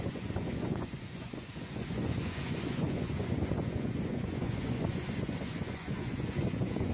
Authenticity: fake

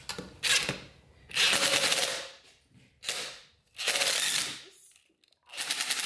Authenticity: real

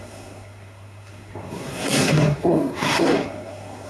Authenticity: fake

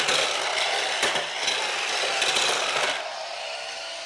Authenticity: real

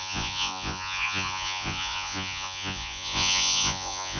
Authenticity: fake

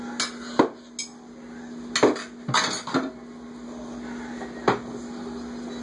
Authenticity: real